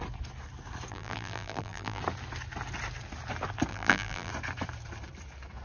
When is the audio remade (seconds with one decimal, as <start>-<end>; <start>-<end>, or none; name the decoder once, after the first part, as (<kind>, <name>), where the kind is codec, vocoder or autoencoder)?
0.9-2.0 (vocoder, BigVGAN v2); 3.7-4.3